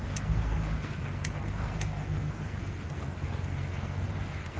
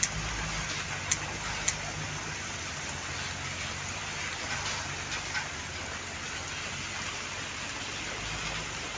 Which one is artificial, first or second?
first